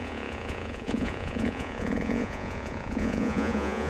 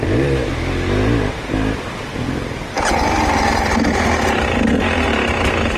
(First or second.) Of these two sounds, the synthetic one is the first